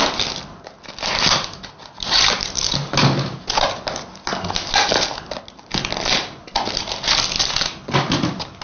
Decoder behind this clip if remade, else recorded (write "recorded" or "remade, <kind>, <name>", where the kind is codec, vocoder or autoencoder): recorded